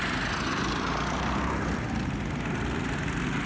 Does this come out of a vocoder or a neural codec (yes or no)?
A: no